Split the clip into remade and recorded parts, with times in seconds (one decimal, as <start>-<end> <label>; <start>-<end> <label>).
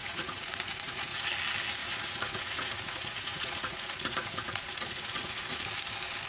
0.0-1.2 remade; 1.2-1.8 recorded; 1.8-5.6 remade; 5.6-6.3 recorded